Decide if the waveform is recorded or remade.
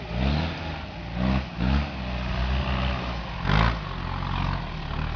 recorded